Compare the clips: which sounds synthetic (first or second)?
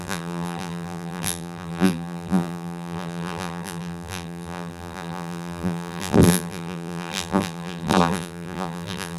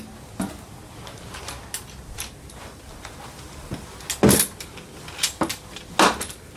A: first